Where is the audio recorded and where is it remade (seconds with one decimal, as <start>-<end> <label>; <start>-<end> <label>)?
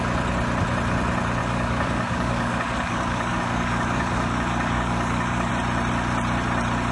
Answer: 0.0-1.4 recorded; 1.4-5.5 remade; 5.5-6.9 recorded